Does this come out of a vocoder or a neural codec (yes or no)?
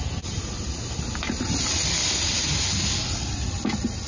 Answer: no